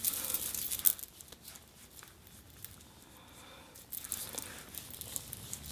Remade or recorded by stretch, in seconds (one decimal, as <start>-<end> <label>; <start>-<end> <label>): 0.0-5.7 recorded